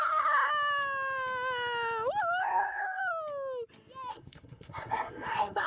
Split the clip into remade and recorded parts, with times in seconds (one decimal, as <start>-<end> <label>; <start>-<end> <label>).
0.0-0.5 remade; 0.5-2.4 recorded; 2.4-3.0 remade; 3.0-4.1 recorded; 4.1-5.7 remade